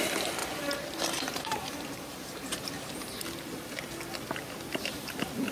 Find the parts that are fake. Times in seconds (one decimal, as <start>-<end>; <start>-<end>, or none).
0.4-3.2